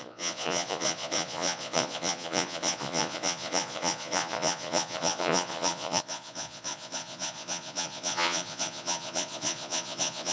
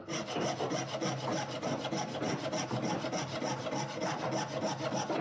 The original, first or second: second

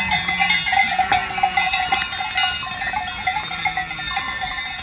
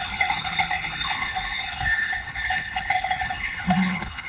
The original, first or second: first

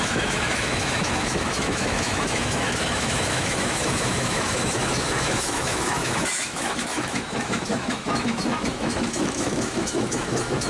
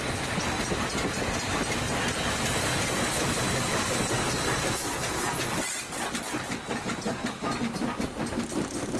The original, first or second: second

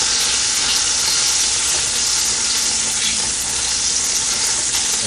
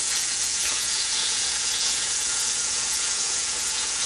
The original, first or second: first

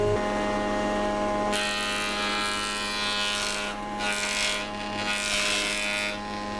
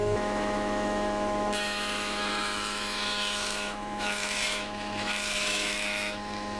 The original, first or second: first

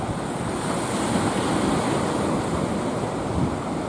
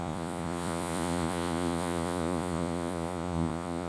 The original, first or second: first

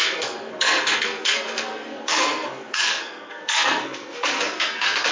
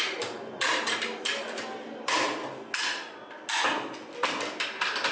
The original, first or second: second